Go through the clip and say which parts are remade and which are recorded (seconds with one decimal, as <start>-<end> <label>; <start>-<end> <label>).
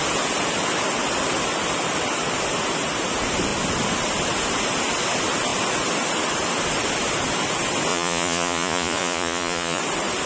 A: 0.0-7.9 recorded; 7.9-9.8 remade; 9.8-10.3 recorded